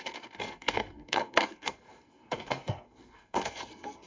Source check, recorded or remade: remade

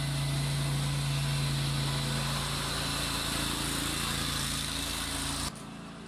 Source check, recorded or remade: recorded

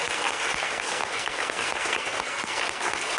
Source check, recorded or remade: remade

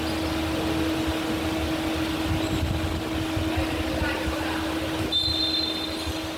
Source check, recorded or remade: recorded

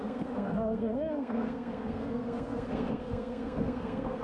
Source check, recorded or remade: remade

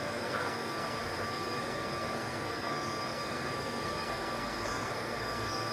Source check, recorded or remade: remade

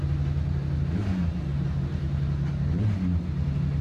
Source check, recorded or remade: recorded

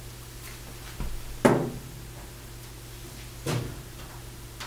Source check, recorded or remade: recorded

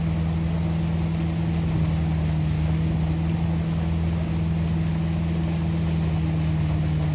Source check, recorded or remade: recorded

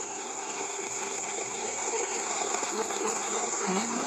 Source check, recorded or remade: remade